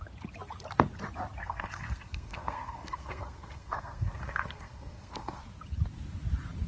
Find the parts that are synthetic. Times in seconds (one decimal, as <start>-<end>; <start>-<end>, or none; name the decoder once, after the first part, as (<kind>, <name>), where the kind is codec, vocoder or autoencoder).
1.4-5.4 (codec, SNAC)